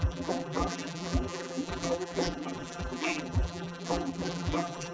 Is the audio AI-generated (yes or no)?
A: yes